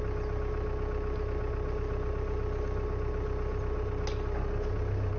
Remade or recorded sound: recorded